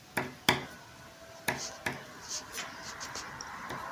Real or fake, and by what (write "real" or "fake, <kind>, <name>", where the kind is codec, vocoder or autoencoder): real